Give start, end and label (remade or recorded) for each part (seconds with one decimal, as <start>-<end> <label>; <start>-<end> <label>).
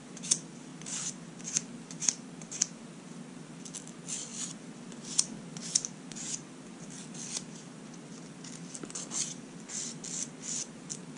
0.0-11.2 recorded